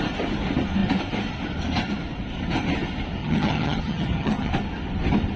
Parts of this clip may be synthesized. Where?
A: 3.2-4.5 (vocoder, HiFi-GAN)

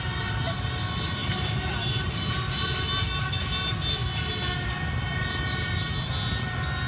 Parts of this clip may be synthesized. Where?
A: none

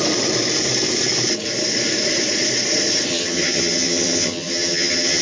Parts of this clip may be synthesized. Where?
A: 3.1-5.2 (vocoder, HiFi-GAN)

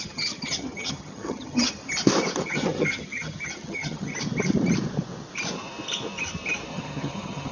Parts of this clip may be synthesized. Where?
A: 0.0-1.8 (vocoder, HiFi-GAN); 2.4-4.1; 6.7-7.5